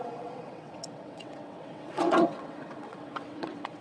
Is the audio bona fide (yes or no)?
no